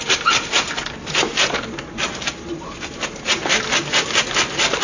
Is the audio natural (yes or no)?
yes